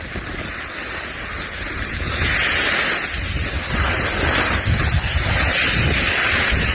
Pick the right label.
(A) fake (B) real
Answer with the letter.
B